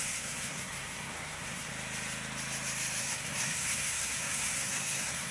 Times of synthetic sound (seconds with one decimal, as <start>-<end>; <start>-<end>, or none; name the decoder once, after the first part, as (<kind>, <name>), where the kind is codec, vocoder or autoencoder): 0.0-1.7 (codec, SNAC); 3.0-5.3